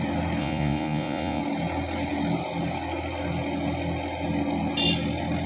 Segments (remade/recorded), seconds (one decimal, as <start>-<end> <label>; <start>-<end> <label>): 0.0-0.4 recorded; 0.4-1.4 remade; 1.4-5.5 recorded